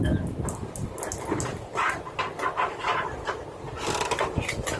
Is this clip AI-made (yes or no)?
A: no